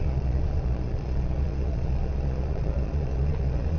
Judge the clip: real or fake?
fake